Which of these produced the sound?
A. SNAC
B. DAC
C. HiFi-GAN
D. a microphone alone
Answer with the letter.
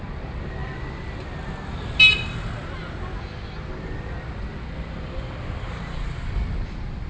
D